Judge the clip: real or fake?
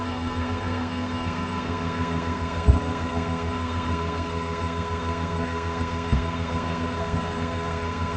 fake